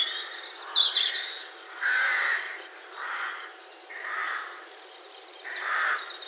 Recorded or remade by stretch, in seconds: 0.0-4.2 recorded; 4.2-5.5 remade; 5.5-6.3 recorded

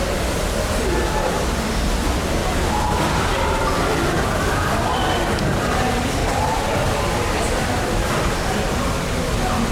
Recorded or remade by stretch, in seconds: 0.0-2.4 recorded; 2.4-5.1 remade; 5.1-6.2 recorded; 6.2-8.5 remade; 8.5-9.7 recorded

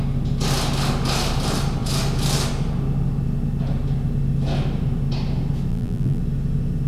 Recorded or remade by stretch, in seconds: 0.0-5.7 recorded; 5.7-6.2 remade; 6.2-6.9 recorded

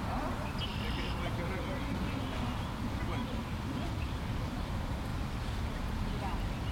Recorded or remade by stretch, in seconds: 0.0-0.7 remade; 0.7-3.4 recorded; 3.4-6.7 remade

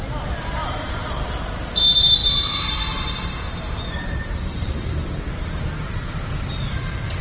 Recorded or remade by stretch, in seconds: 0.0-2.2 recorded; 2.2-5.5 remade; 5.5-7.2 recorded

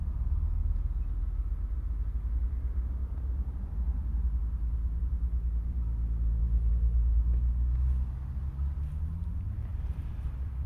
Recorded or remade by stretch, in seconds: 0.0-3.0 recorded; 3.0-3.7 remade; 3.7-9.7 recorded; 9.7-10.7 remade

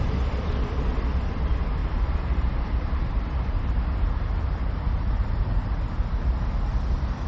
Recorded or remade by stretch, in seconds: 0.0-1.8 recorded; 1.8-3.8 remade; 3.8-4.6 recorded; 4.6-6.4 remade; 6.4-7.3 recorded

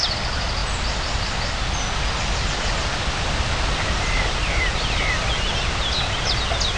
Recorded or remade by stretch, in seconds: 0.0-0.6 remade; 0.6-4.0 recorded; 4.0-4.4 remade; 4.4-6.8 recorded